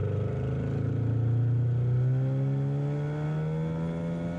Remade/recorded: recorded